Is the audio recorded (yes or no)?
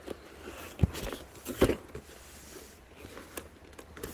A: yes